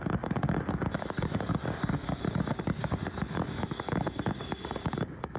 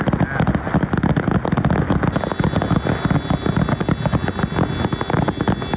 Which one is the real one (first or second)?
second